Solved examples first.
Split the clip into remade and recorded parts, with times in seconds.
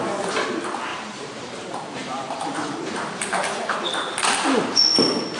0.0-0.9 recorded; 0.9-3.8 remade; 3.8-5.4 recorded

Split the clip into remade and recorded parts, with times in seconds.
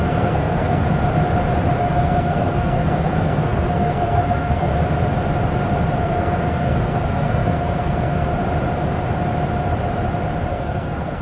0.0-0.8 remade; 0.8-1.8 recorded; 1.8-4.7 remade; 4.7-6.0 recorded; 6.0-8.3 remade; 8.3-10.5 recorded; 10.5-11.2 remade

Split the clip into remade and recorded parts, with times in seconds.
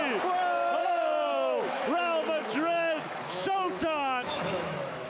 0.0-0.8 recorded; 0.8-1.8 remade; 1.8-2.4 recorded; 2.4-5.1 remade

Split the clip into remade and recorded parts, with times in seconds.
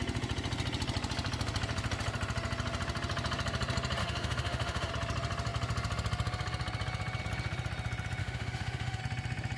0.0-4.0 recorded; 4.0-4.9 remade; 4.9-8.2 recorded; 8.2-9.0 remade; 9.0-9.6 recorded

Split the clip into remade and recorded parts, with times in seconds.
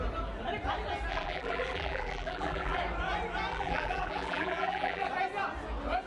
0.0-1.1 recorded; 1.1-2.8 remade; 2.8-3.5 recorded; 3.5-5.1 remade; 5.1-6.1 recorded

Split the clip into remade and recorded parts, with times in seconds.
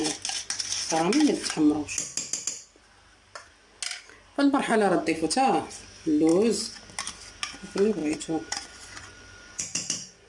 0.0-8.0 recorded; 8.0-10.3 remade